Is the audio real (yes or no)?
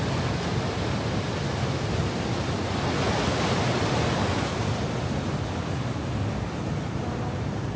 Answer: yes